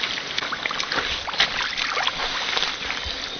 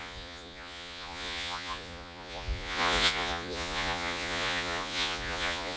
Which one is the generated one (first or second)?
second